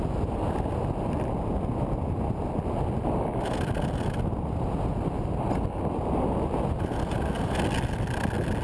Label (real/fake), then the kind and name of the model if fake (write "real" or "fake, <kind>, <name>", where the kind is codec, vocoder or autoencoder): real